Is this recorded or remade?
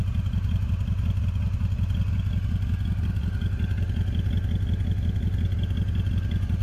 recorded